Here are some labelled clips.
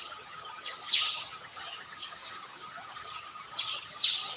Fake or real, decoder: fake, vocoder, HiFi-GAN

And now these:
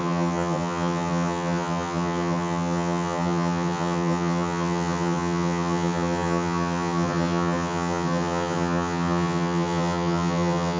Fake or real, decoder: fake, vocoder, HiFi-GAN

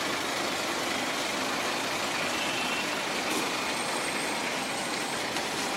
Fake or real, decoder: real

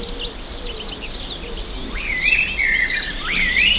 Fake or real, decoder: real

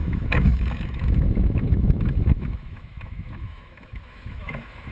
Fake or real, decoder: fake, autoencoder, DAC-VAE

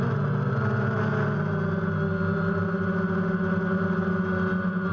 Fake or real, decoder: real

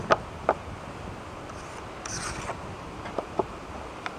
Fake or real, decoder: real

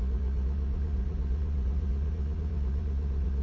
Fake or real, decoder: fake, vocoder, Vocos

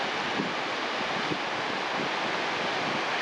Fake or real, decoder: real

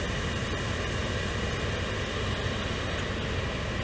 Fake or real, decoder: real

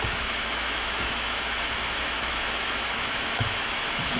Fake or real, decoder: fake, autoencoder, DAC-VAE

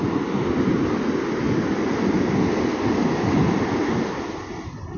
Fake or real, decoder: real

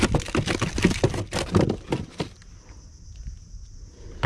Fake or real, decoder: real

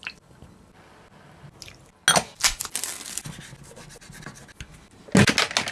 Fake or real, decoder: real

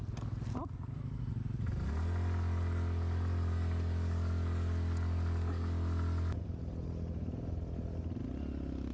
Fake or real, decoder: real